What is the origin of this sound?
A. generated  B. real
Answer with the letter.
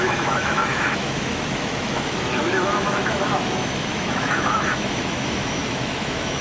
A